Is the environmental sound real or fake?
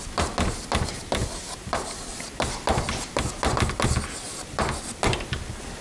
real